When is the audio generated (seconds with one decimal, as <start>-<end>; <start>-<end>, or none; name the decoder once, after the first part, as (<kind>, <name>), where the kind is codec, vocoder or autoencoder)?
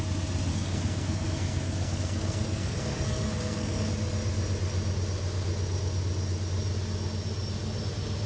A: 0.5-3.9 (codec, SNAC)